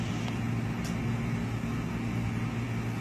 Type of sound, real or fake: real